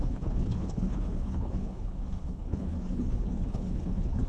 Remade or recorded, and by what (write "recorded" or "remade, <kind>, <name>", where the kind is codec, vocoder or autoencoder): remade, codec, HILCodec